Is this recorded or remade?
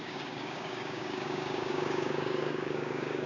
remade